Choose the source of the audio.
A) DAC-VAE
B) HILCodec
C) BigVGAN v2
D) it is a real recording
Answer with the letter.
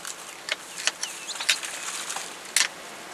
D